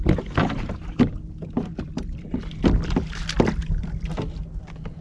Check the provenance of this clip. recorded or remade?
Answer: recorded